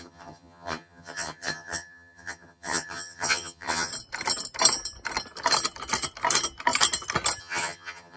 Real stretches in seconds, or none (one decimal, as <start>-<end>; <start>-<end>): 3.9-7.4

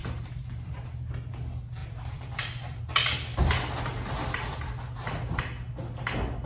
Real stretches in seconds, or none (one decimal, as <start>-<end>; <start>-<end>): 1.3-1.8; 2.8-6.5